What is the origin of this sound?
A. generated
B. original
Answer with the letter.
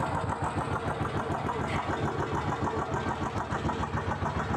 B